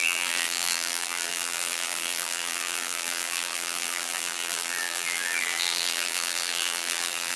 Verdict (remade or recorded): remade